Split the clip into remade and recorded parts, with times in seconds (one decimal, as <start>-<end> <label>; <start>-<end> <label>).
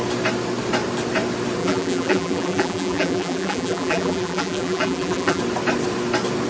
0.0-1.6 recorded; 1.6-5.4 remade; 5.4-6.5 recorded